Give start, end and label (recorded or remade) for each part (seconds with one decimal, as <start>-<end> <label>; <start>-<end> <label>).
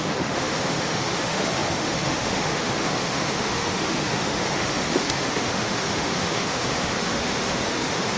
0.0-8.2 remade